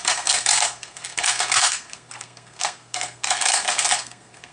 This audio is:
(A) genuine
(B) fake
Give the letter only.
B